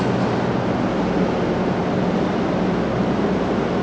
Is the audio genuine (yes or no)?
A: yes